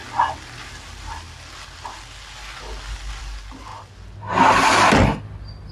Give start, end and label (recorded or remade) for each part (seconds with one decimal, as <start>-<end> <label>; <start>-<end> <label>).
0.0-5.7 recorded